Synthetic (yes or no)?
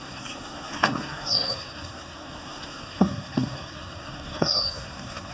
yes